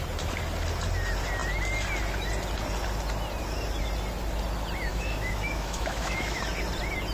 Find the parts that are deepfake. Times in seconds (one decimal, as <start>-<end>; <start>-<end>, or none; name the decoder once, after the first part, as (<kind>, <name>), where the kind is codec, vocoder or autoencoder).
4.9-6.4 (autoencoder, DAC-VAE)